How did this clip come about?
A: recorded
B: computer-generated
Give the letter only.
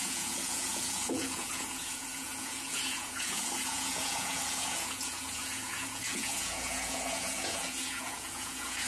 B